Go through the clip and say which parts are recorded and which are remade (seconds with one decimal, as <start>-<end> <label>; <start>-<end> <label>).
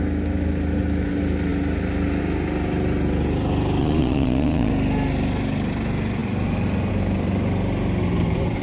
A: 0.0-3.8 recorded; 3.8-4.7 remade; 4.7-8.6 recorded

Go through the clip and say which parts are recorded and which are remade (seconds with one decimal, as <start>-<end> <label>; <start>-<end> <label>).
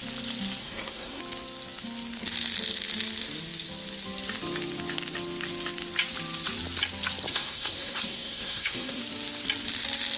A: 0.0-0.6 recorded; 0.6-1.2 remade; 1.2-7.3 recorded; 7.3-9.0 remade; 9.0-10.2 recorded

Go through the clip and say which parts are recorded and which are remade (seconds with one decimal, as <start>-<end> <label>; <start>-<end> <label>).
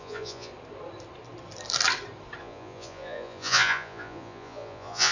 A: 0.0-0.5 remade; 0.5-2.4 recorded; 2.4-5.1 remade